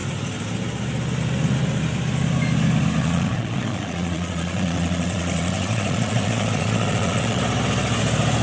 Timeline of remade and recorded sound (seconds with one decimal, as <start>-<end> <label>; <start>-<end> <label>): 0.0-3.0 recorded; 3.0-7.4 remade; 7.4-8.4 recorded